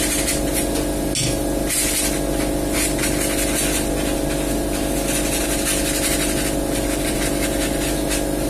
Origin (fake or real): real